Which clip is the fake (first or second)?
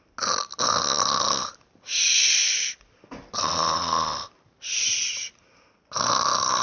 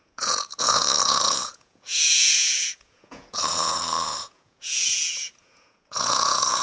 second